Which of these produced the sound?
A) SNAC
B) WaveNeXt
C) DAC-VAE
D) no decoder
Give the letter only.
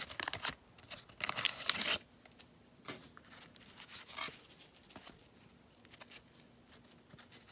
D